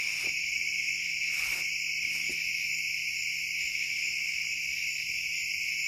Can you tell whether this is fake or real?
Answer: real